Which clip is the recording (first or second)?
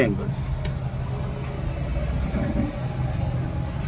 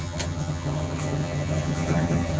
first